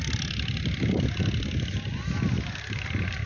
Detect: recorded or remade recorded